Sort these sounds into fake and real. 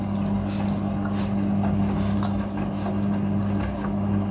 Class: real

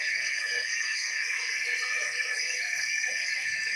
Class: fake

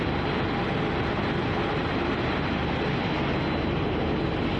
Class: real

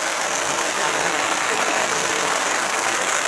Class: fake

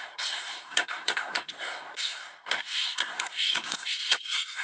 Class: fake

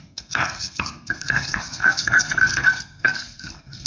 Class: fake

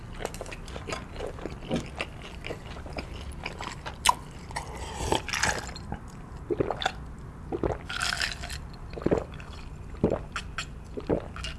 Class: real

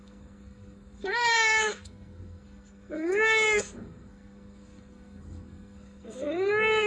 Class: fake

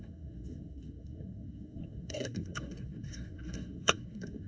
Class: fake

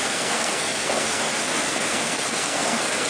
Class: fake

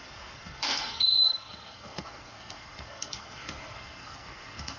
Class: fake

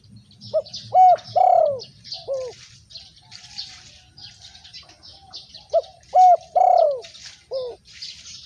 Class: real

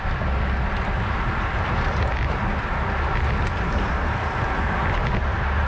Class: real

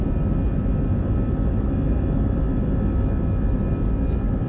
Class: real